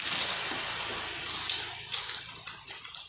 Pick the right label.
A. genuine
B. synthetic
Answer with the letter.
A